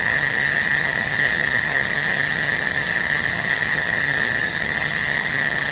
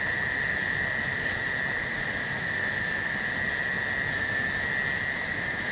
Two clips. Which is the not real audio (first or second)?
first